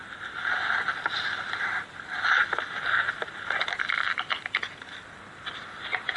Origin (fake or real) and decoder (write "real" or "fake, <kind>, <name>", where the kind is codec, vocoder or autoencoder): real